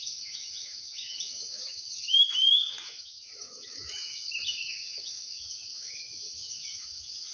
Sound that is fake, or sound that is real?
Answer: fake